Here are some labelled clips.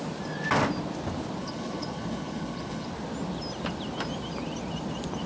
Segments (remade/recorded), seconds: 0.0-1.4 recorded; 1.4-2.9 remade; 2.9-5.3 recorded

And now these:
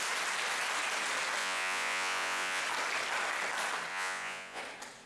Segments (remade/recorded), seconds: 0.0-1.4 recorded; 1.4-2.6 remade; 2.6-3.9 recorded; 3.9-4.6 remade; 4.6-5.1 recorded

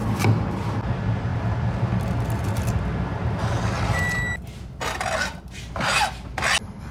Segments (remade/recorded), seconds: 0.0-6.9 recorded

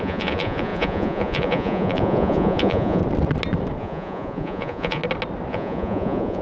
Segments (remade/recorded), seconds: 0.0-3.0 remade; 3.0-3.8 recorded; 3.8-5.0 remade; 5.0-5.5 recorded; 5.5-6.4 remade

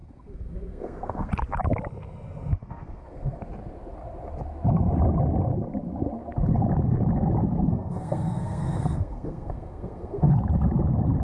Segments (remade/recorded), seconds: 0.0-1.3 remade; 1.3-2.6 recorded; 2.6-3.4 remade; 3.4-7.7 recorded; 7.7-10.3 remade; 10.3-11.2 recorded

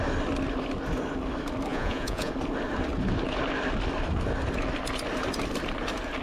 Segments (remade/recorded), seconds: 0.0-1.7 recorded; 1.7-2.3 remade; 2.3-6.2 recorded